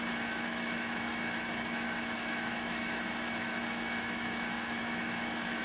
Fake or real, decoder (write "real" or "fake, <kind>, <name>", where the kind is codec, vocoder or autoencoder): fake, autoencoder, DAC-VAE